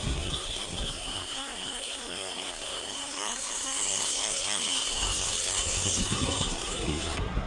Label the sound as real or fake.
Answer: fake